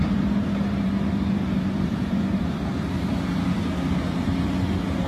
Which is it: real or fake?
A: fake